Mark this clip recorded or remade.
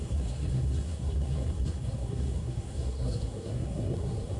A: remade